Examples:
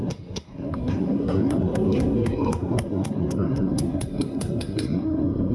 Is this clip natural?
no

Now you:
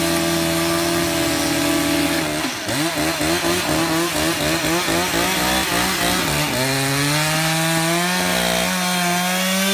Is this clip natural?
yes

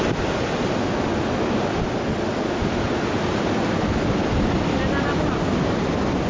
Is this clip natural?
yes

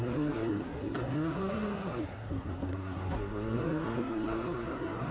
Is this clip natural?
no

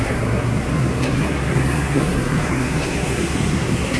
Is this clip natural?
no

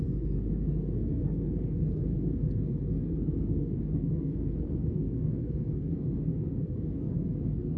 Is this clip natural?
no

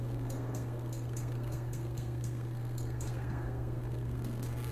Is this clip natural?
no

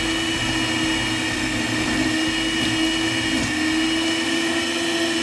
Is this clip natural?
yes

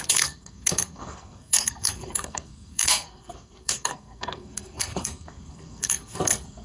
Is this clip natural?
no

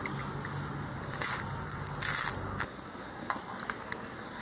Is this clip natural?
yes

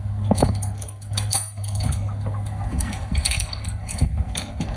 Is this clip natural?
no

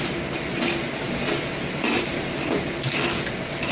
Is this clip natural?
yes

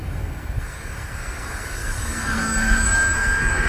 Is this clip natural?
no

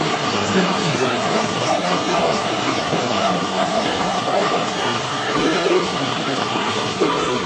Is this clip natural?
no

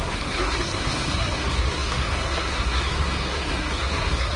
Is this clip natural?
no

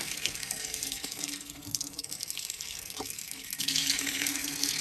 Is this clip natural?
no